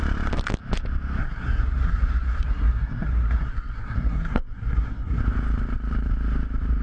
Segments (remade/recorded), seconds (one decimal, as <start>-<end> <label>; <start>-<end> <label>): 0.0-1.2 recorded; 1.2-5.2 remade; 5.2-6.8 recorded